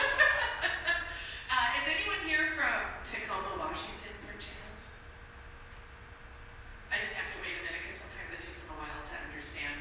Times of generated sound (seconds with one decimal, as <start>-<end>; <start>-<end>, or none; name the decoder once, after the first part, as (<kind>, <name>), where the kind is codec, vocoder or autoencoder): 3.1-4.0 (vocoder, WaveNeXt); 6.7-8.7